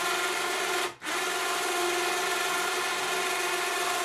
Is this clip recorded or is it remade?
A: recorded